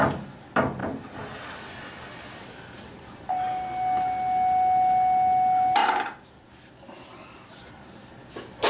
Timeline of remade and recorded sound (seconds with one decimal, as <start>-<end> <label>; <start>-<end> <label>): 0.0-8.7 recorded